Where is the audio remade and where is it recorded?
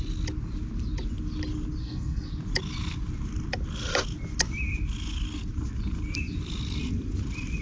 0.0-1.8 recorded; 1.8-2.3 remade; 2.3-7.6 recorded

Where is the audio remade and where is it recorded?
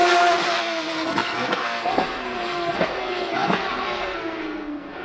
0.0-0.6 recorded; 0.6-5.0 remade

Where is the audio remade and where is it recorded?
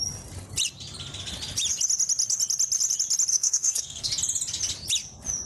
0.0-3.3 recorded; 3.3-4.1 remade; 4.1-5.5 recorded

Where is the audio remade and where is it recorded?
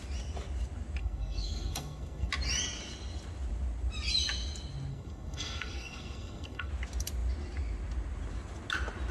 0.0-1.0 recorded; 1.0-2.3 remade; 2.3-4.9 recorded; 4.9-6.7 remade; 6.7-9.1 recorded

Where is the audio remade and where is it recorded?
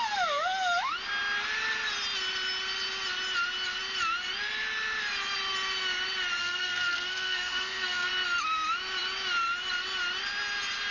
0.0-6.4 recorded; 6.4-8.1 remade; 8.1-10.9 recorded